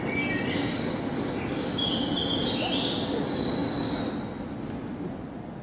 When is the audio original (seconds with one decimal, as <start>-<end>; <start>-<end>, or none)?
0.0-5.6